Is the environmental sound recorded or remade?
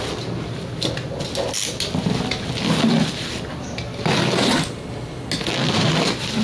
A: recorded